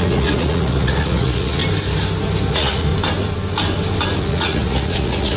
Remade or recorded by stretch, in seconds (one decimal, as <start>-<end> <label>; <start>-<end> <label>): 0.0-1.6 remade; 1.6-2.5 recorded; 2.5-2.9 remade; 2.9-4.2 recorded; 4.2-5.4 remade